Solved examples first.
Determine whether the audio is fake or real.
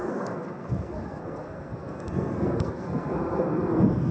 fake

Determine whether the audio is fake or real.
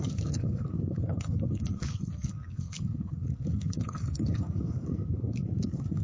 fake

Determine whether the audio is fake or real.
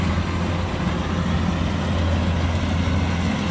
real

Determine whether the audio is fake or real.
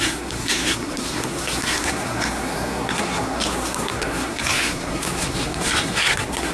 fake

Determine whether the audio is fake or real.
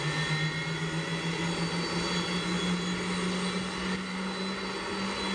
real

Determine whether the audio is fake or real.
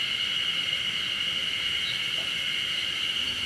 real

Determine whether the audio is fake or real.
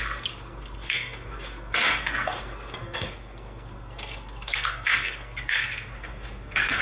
fake